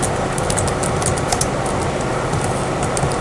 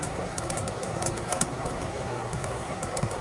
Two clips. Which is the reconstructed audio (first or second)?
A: second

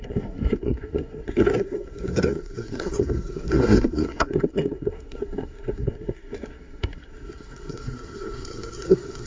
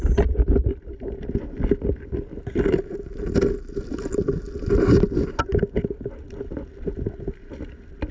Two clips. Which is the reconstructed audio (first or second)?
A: first